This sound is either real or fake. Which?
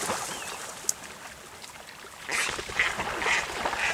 real